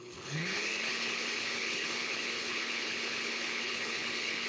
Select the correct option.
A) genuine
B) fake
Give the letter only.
B